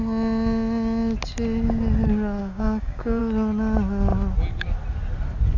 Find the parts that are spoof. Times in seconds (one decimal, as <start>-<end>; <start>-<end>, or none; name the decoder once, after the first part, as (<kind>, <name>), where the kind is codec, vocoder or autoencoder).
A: 2.4-3.2 (codec, DAC)